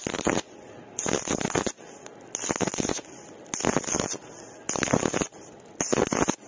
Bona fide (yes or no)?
yes